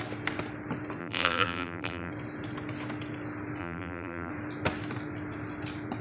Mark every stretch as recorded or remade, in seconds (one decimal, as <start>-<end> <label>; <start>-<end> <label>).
0.0-1.0 recorded; 1.0-2.1 remade; 2.1-3.6 recorded; 3.6-4.3 remade; 4.3-6.0 recorded